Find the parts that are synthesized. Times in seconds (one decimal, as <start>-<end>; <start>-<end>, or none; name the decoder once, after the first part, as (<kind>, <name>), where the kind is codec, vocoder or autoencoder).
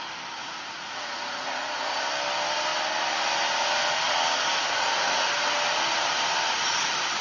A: 0.4-2.0 (vocoder, Vocos)